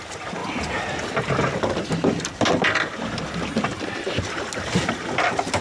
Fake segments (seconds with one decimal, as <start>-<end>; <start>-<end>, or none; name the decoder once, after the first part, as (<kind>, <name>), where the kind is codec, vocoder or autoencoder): none